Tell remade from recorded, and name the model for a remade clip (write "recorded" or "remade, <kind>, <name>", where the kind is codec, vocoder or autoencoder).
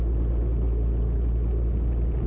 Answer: recorded